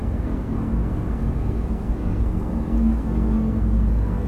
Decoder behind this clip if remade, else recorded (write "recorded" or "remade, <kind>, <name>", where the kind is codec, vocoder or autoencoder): remade, codec, SNAC